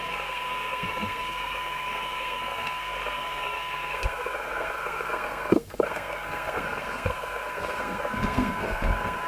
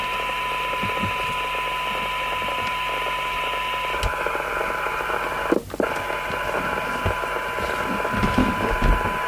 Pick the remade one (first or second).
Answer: first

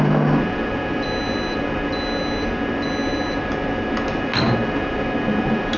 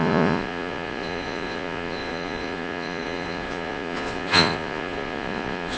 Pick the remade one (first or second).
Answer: second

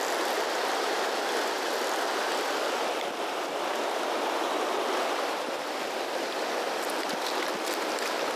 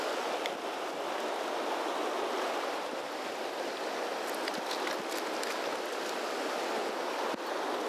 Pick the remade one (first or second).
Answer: first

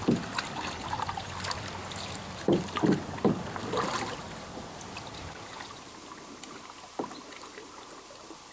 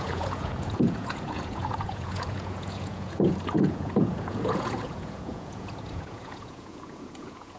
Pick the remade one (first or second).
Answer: second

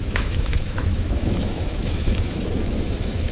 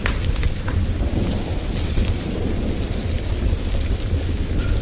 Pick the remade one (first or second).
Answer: first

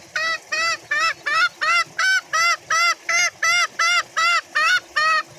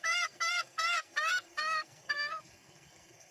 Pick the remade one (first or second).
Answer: second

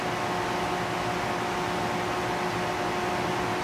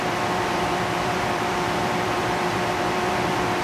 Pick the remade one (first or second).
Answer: second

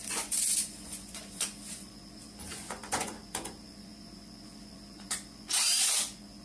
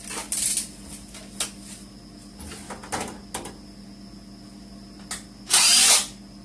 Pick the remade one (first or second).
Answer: first